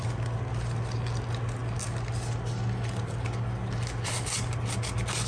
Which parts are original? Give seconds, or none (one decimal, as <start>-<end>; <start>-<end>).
0.0-5.3